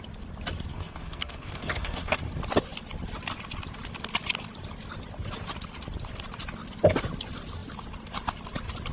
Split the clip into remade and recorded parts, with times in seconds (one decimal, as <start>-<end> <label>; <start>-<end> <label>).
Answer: 0.0-0.7 recorded; 0.7-2.2 remade; 2.2-8.9 recorded